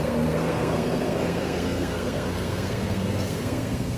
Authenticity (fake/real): fake